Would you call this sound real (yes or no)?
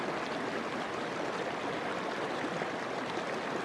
yes